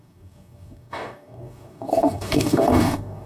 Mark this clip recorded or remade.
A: remade